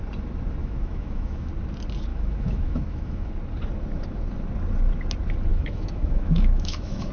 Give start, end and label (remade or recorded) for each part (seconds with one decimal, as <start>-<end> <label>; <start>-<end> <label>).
0.0-0.6 recorded; 0.6-1.5 remade; 1.5-2.1 recorded; 2.1-3.3 remade; 3.3-5.5 recorded; 5.5-7.1 remade